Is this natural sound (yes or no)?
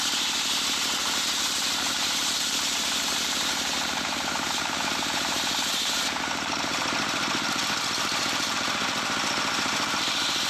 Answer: no